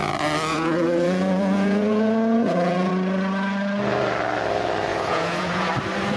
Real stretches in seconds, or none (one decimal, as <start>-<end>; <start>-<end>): 0.0-0.5; 2.9-4.9; 5.7-6.2